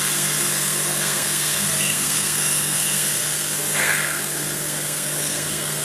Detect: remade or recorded remade